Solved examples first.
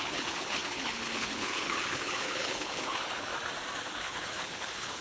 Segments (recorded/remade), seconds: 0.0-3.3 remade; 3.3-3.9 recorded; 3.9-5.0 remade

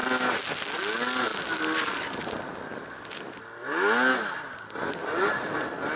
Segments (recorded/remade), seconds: 0.0-6.0 recorded

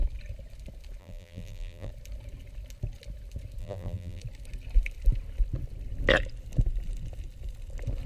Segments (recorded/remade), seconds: 0.0-1.0 recorded; 1.0-1.9 remade; 1.9-3.6 recorded; 3.6-4.2 remade; 4.2-8.1 recorded

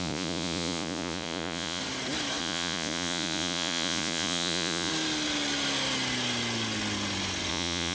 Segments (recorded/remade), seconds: 0.0-1.8 remade; 1.8-2.4 recorded; 2.4-4.9 remade; 4.9-7.5 recorded; 7.5-7.9 remade